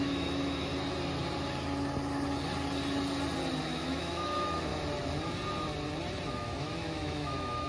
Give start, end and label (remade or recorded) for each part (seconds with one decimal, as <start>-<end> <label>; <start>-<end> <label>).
0.0-0.7 remade; 0.7-3.6 recorded; 3.6-4.7 remade; 4.7-6.3 recorded; 6.3-7.7 remade